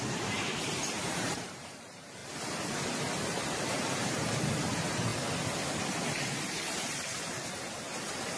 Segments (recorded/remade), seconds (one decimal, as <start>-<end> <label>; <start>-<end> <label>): 0.0-2.2 remade; 2.2-3.6 recorded; 3.6-5.1 remade; 5.1-6.4 recorded; 6.4-8.4 remade